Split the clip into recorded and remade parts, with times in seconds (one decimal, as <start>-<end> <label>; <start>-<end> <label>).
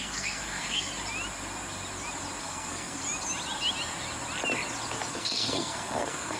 0.0-0.9 remade; 0.9-2.4 recorded; 2.4-3.0 remade; 3.0-5.1 recorded; 5.1-6.4 remade